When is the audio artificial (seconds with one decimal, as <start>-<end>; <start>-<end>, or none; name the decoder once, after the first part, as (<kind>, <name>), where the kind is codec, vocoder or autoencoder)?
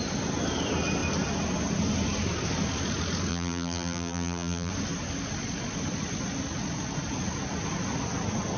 3.3-4.7 (vocoder, BigVGAN v2)